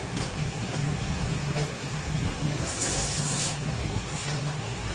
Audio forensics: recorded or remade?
remade